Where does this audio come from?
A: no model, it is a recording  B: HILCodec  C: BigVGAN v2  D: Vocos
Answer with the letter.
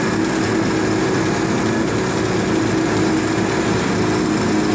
A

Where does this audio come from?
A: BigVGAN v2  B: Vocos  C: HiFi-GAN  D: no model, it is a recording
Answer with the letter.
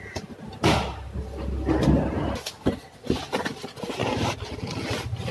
D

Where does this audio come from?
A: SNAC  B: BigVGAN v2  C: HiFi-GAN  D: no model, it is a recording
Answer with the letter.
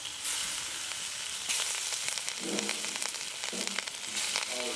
D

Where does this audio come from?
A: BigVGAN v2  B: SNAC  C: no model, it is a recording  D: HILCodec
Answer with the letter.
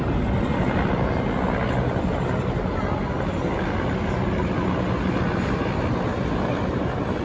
C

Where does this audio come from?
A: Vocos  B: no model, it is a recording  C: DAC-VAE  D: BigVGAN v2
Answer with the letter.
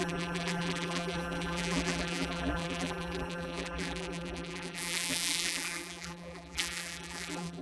D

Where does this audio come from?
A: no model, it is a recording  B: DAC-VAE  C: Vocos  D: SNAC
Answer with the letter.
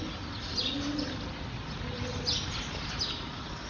A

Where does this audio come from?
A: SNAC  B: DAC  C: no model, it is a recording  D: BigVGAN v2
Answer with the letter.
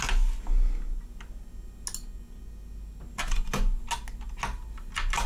C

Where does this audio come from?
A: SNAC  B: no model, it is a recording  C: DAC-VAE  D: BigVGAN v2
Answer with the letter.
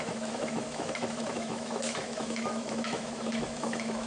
C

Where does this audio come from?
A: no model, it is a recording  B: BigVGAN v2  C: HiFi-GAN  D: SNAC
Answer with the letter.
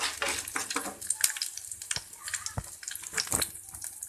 A